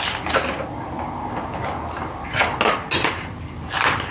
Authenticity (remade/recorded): recorded